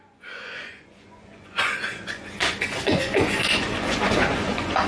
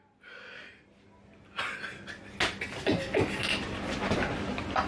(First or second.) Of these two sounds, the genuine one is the second